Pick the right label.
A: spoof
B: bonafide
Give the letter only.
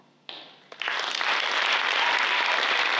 B